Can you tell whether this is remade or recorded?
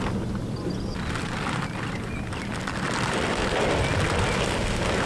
recorded